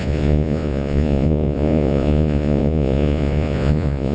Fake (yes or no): yes